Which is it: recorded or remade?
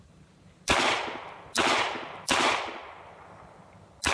recorded